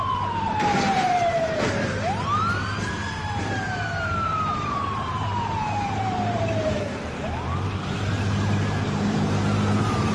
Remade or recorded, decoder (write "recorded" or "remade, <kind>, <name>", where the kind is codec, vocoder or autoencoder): remade, vocoder, BigVGAN v2